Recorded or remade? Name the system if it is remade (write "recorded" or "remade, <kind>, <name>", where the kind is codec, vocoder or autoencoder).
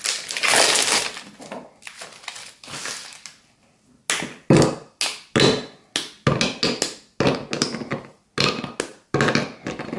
recorded